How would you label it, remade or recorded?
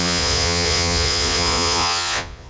remade